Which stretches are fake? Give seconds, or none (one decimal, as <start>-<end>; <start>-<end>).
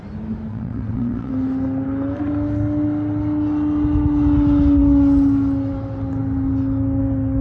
0.5-1.3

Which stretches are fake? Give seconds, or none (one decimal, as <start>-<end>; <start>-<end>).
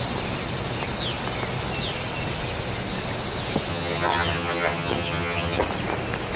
3.7-5.6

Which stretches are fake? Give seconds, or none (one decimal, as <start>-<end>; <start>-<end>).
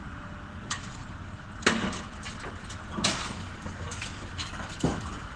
0.5-1.0; 3.1-5.4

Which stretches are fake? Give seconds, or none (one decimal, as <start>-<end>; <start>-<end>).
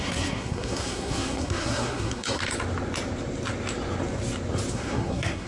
0.0-2.4; 4.7-5.5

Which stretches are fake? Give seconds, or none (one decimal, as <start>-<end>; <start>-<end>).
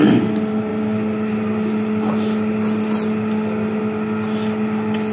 none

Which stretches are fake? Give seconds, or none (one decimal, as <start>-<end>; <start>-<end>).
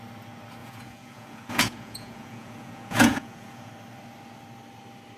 0.6-3.7